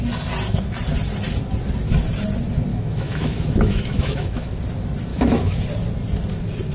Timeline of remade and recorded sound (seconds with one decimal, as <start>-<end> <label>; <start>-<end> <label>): 0.0-2.7 recorded; 2.7-4.5 remade; 4.5-5.1 recorded; 5.1-5.6 remade; 5.6-6.7 recorded